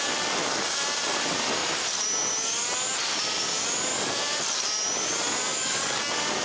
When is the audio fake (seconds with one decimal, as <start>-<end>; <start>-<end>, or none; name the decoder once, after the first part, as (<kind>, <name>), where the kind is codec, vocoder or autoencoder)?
5.5-6.0 (codec, DAC)